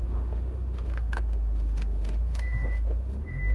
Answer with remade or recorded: remade